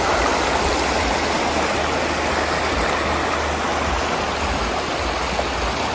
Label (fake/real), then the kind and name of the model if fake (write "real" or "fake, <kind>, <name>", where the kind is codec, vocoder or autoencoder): real